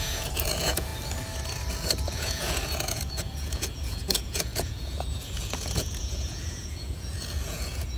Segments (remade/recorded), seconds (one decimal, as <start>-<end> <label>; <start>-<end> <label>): 0.0-0.9 remade; 0.9-1.7 recorded; 1.7-8.0 remade